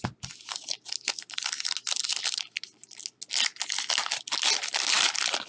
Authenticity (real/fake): real